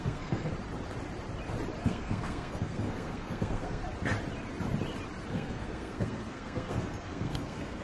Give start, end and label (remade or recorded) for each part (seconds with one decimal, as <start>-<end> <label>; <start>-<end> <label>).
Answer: 0.0-0.5 remade; 0.5-1.8 recorded; 1.8-3.8 remade; 3.8-5.3 recorded; 5.3-7.8 remade